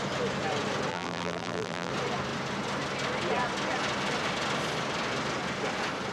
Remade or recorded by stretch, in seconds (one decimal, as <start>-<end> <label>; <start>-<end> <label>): 0.0-0.9 recorded; 0.9-1.9 remade; 1.9-6.1 recorded